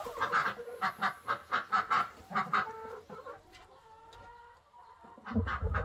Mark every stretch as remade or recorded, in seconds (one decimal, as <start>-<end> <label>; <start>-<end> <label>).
0.0-0.4 recorded; 0.4-0.9 remade; 0.9-1.4 recorded; 1.4-3.8 remade; 3.8-5.8 recorded